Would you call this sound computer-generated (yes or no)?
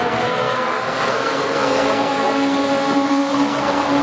yes